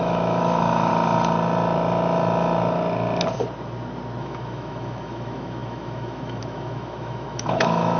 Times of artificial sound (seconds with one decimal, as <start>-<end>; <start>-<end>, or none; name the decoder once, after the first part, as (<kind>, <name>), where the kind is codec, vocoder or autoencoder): 0.0-0.9 (autoencoder, DAC-VAE); 4.2-8.0